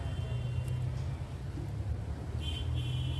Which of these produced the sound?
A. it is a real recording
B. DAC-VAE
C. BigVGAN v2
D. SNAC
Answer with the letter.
A